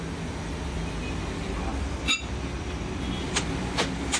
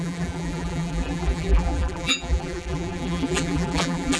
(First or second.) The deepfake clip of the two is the second